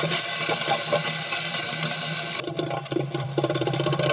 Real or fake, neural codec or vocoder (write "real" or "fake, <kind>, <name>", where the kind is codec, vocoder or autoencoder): fake, vocoder, BigVGAN v2